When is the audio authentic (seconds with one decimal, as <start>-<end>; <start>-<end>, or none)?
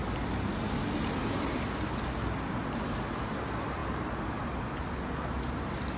0.0-6.0